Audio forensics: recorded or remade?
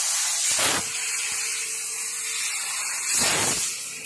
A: recorded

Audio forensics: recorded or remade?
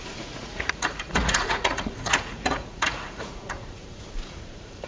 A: remade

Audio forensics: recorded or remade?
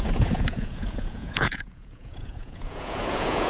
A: remade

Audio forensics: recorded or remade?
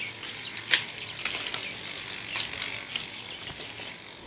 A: recorded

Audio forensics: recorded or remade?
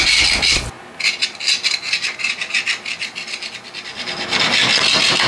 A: recorded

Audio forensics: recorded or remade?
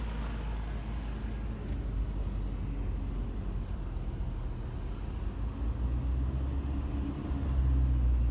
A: recorded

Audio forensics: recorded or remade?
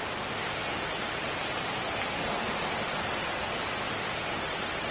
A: recorded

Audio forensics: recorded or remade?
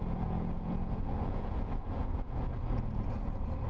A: remade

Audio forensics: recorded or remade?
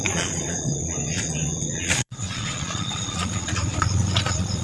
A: remade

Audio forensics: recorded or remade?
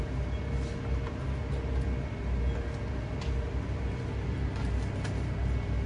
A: recorded